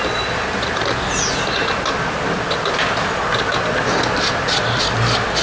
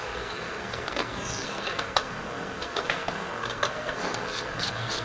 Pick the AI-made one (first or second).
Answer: second